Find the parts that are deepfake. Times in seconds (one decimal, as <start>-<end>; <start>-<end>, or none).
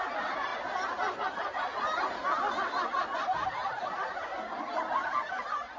none